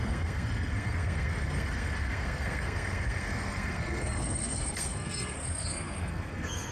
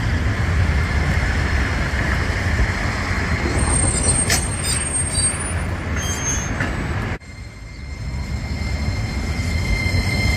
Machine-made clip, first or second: first